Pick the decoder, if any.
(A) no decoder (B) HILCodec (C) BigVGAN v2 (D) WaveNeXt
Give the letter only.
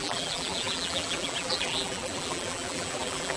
C